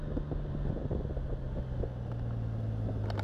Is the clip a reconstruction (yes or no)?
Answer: no